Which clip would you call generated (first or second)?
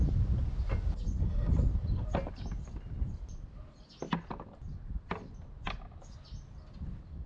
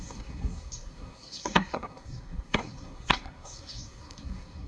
second